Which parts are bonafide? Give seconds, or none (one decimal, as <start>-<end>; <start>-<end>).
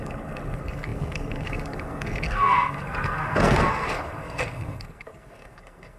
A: none